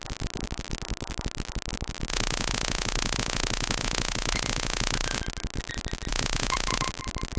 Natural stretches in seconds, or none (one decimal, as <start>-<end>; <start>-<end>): 0.0-2.1; 5.2-6.1; 6.9-7.4